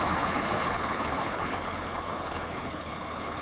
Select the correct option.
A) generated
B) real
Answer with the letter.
A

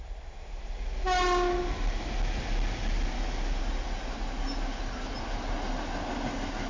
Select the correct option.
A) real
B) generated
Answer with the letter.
A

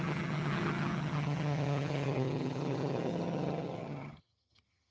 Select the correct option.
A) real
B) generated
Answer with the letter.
B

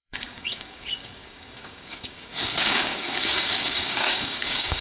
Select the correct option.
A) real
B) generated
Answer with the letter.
B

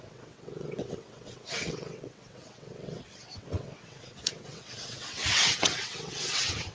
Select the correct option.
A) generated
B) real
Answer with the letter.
A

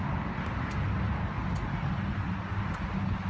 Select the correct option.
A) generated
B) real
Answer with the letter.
B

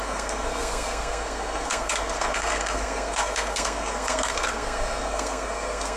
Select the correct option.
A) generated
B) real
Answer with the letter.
A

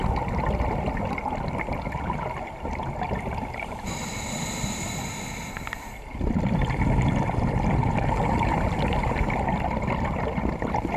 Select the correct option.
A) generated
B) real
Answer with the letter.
B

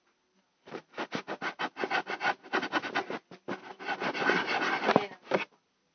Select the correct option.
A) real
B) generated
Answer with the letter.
A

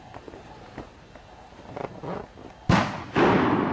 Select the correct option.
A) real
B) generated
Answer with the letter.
A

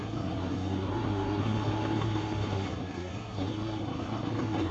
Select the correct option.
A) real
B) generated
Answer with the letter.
B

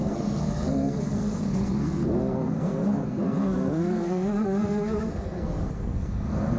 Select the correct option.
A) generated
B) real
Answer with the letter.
A